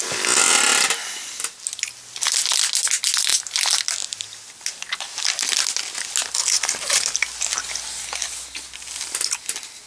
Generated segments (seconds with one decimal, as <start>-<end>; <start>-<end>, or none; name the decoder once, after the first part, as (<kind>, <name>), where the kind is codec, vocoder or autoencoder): none